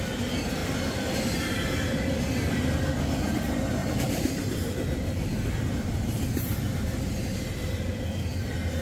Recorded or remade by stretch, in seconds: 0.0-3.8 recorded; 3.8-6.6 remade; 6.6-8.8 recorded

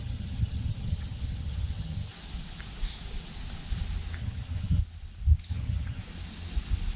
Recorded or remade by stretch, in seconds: 0.0-2.1 remade; 2.1-4.2 recorded; 4.2-4.8 remade; 4.8-5.5 recorded; 5.5-6.0 remade; 6.0-7.0 recorded

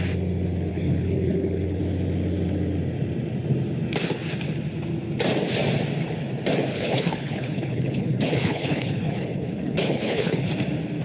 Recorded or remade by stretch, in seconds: 0.0-0.7 recorded; 0.7-1.8 remade; 1.8-6.7 recorded; 6.7-10.5 remade; 10.5-11.0 recorded

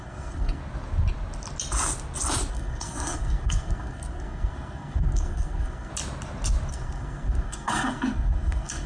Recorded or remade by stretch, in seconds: 0.0-0.6 remade; 0.6-2.5 recorded; 2.5-5.9 remade; 5.9-6.7 recorded; 6.7-8.9 remade

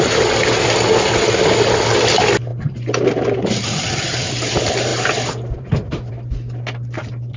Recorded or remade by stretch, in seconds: 0.0-7.4 recorded

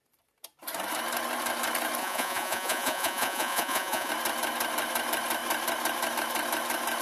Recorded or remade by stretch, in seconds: 0.0-2.0 recorded; 2.0-4.1 remade; 4.1-7.0 recorded